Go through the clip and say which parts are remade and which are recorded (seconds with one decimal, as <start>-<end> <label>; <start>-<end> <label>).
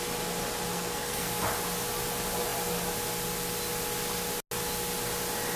0.0-0.7 recorded; 0.7-1.4 remade; 1.4-5.6 recorded